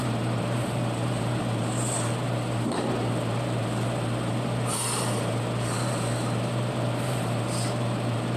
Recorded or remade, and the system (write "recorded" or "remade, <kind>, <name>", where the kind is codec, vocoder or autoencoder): remade, vocoder, BigVGAN v2